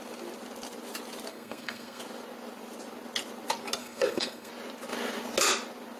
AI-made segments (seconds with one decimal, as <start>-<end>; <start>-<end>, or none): 1.3-2.0; 3.8-4.5